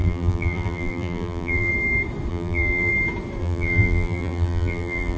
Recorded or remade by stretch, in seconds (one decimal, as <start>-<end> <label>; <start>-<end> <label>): 0.0-1.7 remade; 1.7-2.3 recorded; 2.3-2.9 remade; 2.9-3.4 recorded; 3.4-5.2 remade